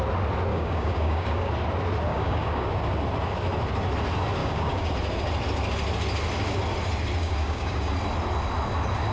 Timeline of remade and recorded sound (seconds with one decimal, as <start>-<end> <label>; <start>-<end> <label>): 0.0-0.5 recorded; 0.5-1.5 remade; 1.5-2.1 recorded; 2.1-2.7 remade; 2.7-4.4 recorded; 4.4-4.9 remade; 4.9-7.2 recorded; 7.2-7.9 remade; 7.9-9.1 recorded